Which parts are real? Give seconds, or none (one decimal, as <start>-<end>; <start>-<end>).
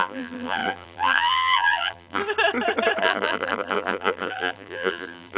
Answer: 2.2-3.0